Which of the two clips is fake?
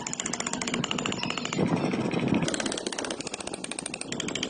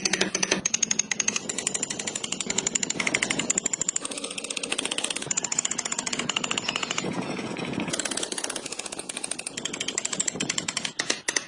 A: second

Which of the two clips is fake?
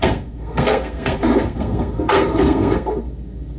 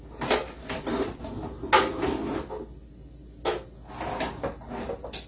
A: first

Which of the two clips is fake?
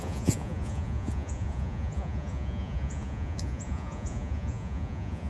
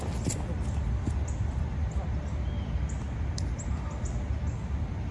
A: first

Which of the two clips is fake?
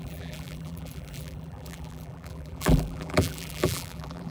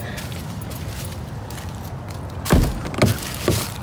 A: first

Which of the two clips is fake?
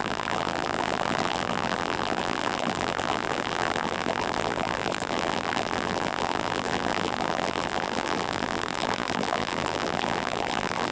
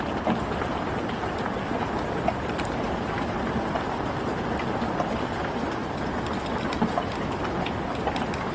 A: first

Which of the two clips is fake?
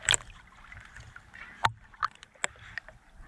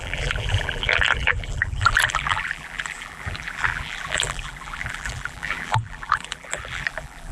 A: second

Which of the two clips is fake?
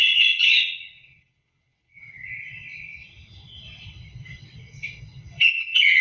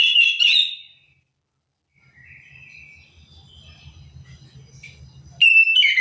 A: first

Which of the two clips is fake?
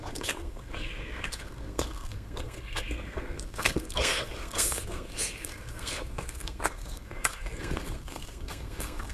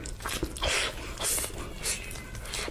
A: first